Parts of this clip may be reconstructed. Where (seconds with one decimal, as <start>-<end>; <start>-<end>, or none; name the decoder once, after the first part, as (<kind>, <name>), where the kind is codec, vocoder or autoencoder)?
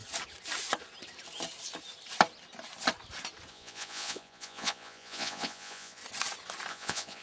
3.5-6.0 (vocoder, Vocos); 6.7-7.2